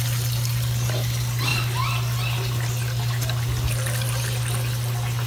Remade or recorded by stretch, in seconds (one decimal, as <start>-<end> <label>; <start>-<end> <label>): 0.0-5.3 recorded